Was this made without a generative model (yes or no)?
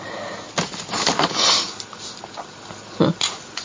yes